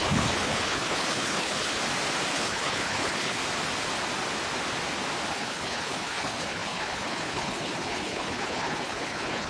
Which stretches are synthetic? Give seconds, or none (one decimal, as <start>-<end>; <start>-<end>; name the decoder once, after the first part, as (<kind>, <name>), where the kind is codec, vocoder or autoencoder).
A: 0.0-1.8 (codec, HILCodec); 2.3-3.4; 5.3-9.5